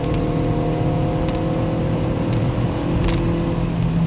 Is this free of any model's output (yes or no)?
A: yes